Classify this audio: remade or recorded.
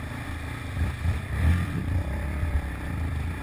remade